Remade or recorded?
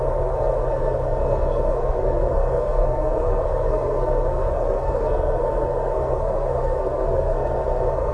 remade